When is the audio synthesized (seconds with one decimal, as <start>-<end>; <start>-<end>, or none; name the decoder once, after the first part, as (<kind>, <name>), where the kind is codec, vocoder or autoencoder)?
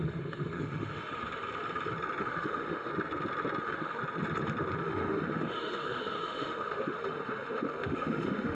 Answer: 0.0-1.2 (autoencoder, DAC-VAE); 2.2-2.9; 3.6-4.0; 4.8-8.5